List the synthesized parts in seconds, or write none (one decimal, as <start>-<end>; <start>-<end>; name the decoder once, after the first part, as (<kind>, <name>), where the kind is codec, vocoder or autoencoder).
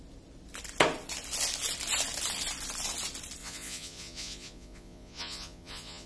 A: 3.4-6.1 (vocoder, Vocos)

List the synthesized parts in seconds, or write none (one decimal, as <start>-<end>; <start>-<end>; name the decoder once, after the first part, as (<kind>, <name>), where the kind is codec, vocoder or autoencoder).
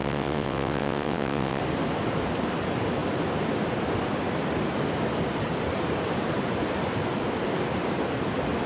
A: 0.0-1.6 (vocoder, WaveNeXt)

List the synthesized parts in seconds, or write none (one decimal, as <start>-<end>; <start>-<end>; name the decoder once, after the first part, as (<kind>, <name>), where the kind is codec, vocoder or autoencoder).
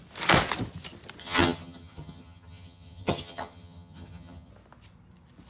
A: 1.2-4.5 (vocoder, HiFi-GAN)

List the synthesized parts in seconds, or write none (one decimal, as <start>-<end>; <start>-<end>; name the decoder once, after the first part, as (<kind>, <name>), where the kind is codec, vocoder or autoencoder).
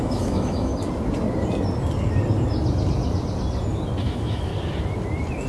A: 0.0-0.7 (autoencoder, DAC-VAE); 4.0-4.5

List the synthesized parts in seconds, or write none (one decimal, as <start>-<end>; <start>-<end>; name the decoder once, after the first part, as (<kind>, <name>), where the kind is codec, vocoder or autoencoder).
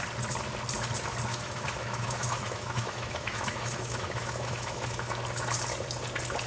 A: 1.3-5.2 (autoencoder, DAC-VAE)